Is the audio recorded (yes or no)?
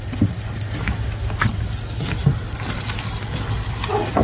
yes